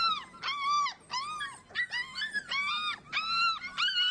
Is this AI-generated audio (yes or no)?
no